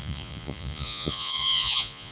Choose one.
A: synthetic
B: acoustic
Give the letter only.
A